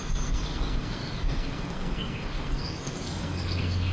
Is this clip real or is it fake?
fake